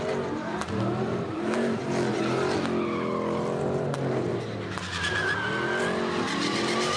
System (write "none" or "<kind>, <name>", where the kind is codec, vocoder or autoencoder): none